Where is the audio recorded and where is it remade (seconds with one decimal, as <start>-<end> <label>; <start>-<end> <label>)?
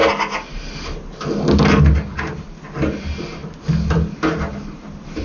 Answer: 0.0-5.2 recorded